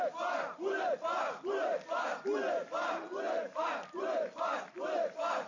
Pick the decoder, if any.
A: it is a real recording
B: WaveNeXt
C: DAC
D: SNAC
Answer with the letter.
A